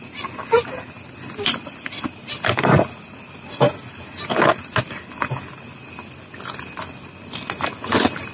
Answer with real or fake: real